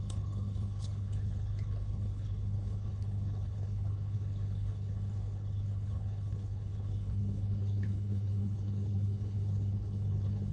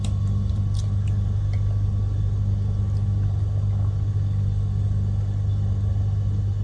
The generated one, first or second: first